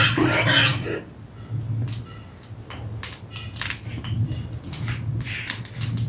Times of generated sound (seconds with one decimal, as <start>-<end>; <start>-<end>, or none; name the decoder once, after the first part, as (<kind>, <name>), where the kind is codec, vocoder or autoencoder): none